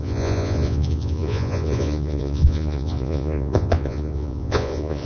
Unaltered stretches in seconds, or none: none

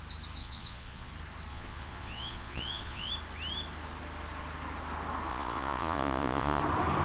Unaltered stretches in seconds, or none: 0.0-0.4; 1.1-1.5; 3.1-5.3; 6.6-7.0

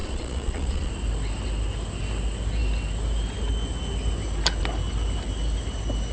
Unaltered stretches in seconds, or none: 0.9-6.1

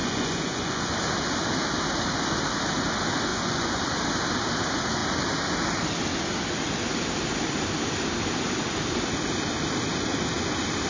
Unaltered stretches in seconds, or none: 0.9-3.3; 3.8-10.9

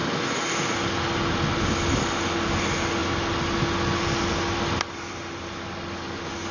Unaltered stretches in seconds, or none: 0.0-6.5